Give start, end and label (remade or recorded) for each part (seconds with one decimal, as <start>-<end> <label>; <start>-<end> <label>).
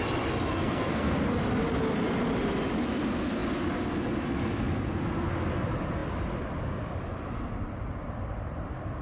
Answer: 0.0-0.6 recorded; 0.6-1.2 remade; 1.2-9.0 recorded